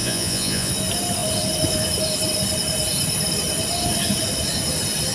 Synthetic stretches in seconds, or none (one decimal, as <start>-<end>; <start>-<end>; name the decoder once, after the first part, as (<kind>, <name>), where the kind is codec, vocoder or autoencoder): 0.0-0.7 (vocoder, Vocos)